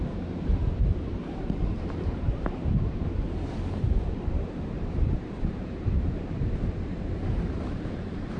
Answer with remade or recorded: remade